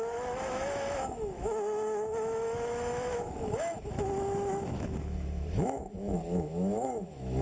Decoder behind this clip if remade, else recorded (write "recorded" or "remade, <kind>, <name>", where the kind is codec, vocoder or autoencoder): remade, autoencoder, DAC-VAE